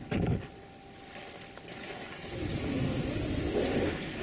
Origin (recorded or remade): recorded